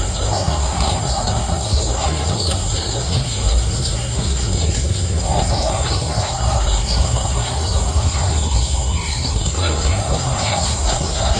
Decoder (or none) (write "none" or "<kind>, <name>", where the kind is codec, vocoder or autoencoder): codec, SNAC